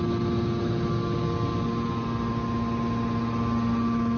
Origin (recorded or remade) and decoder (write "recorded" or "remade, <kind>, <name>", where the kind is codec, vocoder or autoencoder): recorded